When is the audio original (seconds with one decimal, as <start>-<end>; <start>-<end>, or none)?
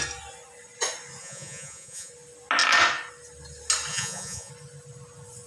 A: 0.0-1.2; 2.1-3.9; 4.5-5.5